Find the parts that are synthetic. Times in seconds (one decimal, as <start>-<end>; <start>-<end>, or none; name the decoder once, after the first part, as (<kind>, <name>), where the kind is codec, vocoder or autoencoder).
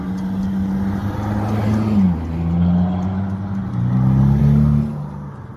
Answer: none